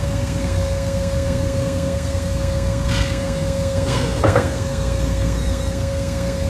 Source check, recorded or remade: remade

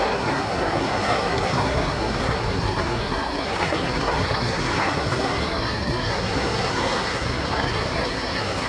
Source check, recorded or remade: remade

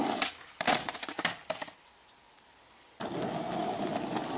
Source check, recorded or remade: recorded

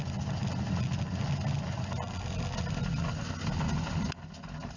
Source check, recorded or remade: recorded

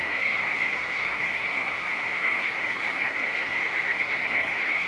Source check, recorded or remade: remade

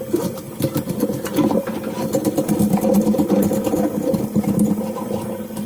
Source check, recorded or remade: recorded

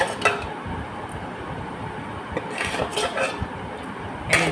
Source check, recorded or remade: recorded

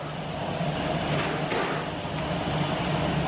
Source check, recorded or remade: recorded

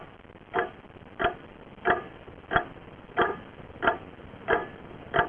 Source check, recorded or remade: recorded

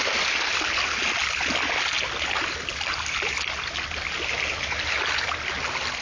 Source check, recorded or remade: recorded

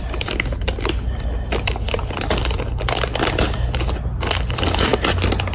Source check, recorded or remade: recorded